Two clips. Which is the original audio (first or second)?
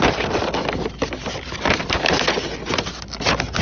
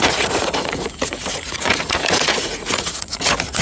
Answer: first